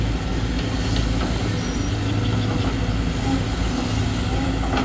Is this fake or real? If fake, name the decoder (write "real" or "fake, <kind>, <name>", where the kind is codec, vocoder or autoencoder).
real